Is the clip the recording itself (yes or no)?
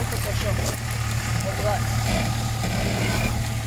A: yes